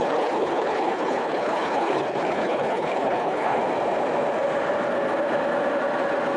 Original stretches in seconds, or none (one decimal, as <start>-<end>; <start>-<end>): 3.6-6.4